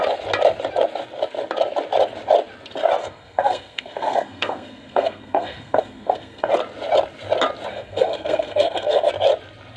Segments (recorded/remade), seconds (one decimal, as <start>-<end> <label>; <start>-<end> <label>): 0.0-3.0 recorded; 3.0-6.5 remade; 6.5-7.7 recorded; 7.7-9.1 remade; 9.1-9.8 recorded